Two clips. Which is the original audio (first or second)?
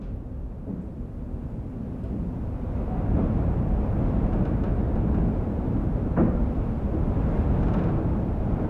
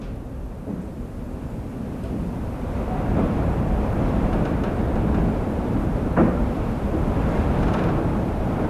first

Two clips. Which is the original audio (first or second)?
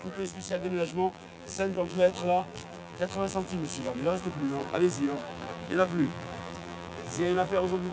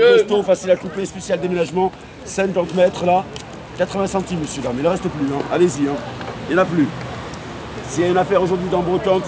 second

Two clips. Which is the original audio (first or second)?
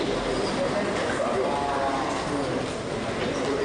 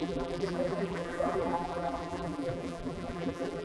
first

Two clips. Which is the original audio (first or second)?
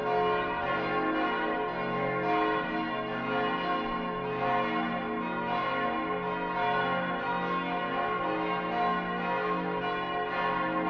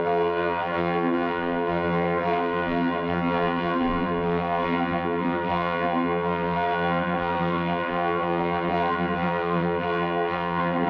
first